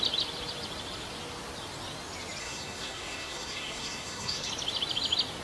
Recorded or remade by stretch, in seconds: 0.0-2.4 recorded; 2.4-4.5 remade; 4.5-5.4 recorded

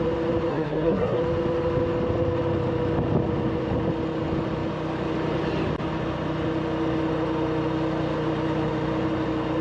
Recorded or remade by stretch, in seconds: 0.0-0.5 recorded; 0.5-1.2 remade; 1.2-9.6 recorded

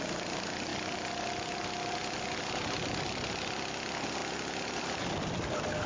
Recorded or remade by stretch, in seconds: 0.0-5.9 recorded

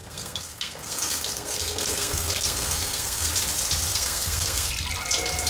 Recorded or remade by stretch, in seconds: 0.0-3.3 remade; 3.3-3.9 recorded; 3.9-4.7 remade; 4.7-5.5 recorded

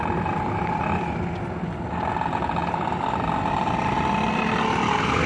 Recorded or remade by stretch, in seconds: 0.0-5.3 recorded